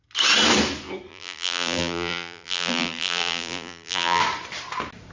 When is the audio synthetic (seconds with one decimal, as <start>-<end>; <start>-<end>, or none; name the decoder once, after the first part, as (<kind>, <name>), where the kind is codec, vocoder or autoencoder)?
1.1-4.2 (vocoder, BigVGAN v2)